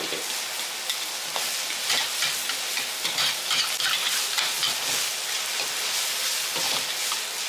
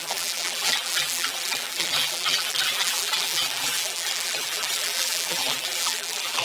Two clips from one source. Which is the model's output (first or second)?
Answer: second